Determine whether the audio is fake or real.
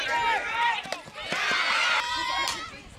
real